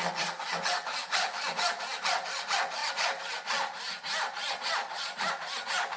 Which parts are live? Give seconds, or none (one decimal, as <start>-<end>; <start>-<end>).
0.0-6.0